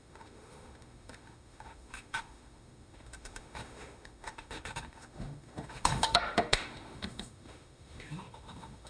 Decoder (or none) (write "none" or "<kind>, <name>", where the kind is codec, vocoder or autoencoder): autoencoder, DAC-VAE